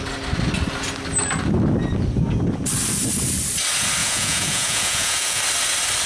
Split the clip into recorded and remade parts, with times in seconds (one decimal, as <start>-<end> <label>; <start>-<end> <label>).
0.0-4.0 recorded; 4.0-5.4 remade; 5.4-6.1 recorded